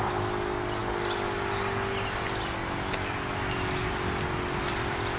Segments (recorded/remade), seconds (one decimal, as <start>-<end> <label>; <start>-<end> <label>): 0.0-5.2 recorded